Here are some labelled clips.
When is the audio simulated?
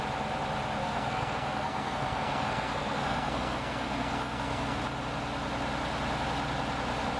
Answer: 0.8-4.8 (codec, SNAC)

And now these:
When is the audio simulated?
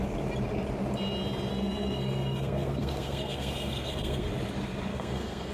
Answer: 1.5-4.3 (codec, SNAC); 4.9-5.5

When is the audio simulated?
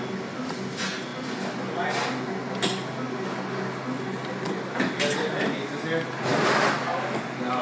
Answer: none